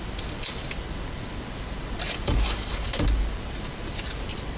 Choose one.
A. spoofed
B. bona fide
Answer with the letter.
B